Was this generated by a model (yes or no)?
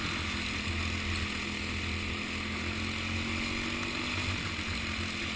no